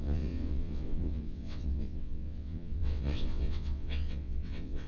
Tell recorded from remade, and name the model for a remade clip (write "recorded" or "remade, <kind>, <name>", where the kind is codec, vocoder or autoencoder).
remade, vocoder, WaveNeXt